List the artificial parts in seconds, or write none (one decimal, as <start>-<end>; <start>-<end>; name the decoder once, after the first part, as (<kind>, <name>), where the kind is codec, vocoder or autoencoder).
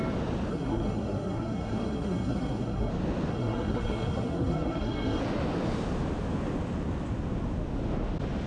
0.5-2.9 (codec, SNAC); 3.3-5.2